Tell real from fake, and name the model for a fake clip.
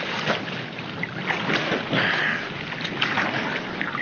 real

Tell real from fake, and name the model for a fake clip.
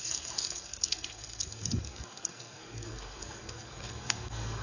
fake, codec, SNAC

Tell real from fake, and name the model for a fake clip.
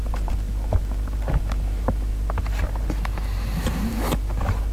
fake, vocoder, BigVGAN v2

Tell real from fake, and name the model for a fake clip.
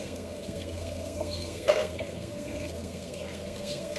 fake, codec, SNAC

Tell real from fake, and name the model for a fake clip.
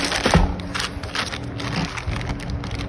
real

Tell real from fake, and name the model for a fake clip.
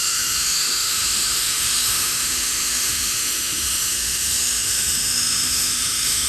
fake, autoencoder, DAC-VAE